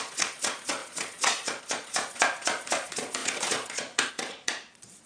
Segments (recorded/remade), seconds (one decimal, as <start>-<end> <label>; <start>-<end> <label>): 0.0-5.1 remade